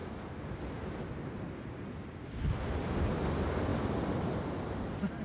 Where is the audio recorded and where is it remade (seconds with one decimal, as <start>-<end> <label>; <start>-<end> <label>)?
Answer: 0.0-5.2 recorded